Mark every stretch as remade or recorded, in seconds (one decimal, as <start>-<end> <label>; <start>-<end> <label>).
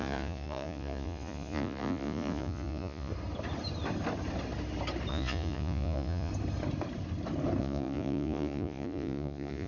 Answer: 0.0-3.1 remade; 3.1-5.1 recorded; 5.1-6.3 remade; 6.3-7.6 recorded; 7.6-9.7 remade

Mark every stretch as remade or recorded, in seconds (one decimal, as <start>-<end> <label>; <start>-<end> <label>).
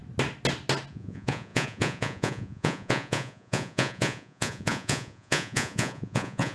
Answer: 0.0-0.9 recorded; 0.9-6.5 remade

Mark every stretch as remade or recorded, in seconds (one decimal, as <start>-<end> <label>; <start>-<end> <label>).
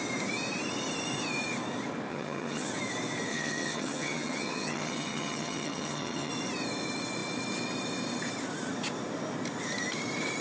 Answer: 0.0-2.1 recorded; 2.1-2.7 remade; 2.7-3.3 recorded; 3.3-6.3 remade; 6.3-10.4 recorded